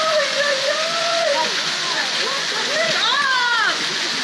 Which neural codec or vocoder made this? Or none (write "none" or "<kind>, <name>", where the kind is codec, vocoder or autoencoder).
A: vocoder, Vocos